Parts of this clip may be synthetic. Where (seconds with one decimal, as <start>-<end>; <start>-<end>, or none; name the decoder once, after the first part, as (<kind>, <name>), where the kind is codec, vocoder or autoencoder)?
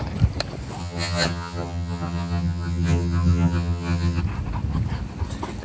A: 0.8-4.2 (vocoder, HiFi-GAN)